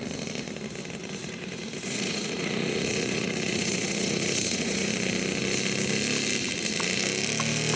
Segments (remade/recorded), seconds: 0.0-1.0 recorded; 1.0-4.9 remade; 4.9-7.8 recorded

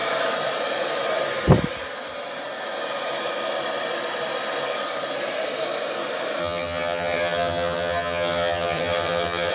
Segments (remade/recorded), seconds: 0.0-6.4 recorded; 6.4-9.5 remade

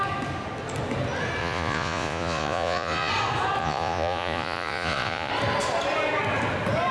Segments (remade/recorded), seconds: 0.0-1.4 recorded; 1.4-3.1 remade; 3.1-3.6 recorded; 3.6-5.3 remade; 5.3-6.9 recorded